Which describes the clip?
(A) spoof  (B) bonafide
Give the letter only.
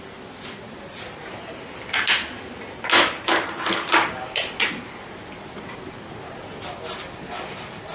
B